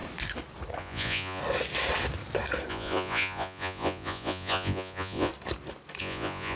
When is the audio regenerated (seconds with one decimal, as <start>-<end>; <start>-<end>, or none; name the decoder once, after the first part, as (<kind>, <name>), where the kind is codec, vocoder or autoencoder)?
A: 0.8-1.4 (vocoder, Vocos); 2.7-5.3; 6.0-6.6